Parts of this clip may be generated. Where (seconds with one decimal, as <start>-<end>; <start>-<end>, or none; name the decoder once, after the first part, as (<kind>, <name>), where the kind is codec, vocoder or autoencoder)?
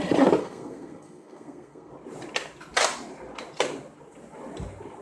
0.4-1.9 (codec, SNAC)